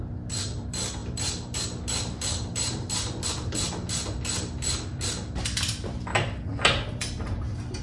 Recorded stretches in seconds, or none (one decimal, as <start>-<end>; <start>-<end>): 0.0-7.8